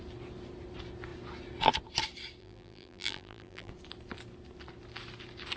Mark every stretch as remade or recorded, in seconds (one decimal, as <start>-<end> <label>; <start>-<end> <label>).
0.0-2.4 recorded; 2.4-3.7 remade; 3.7-5.6 recorded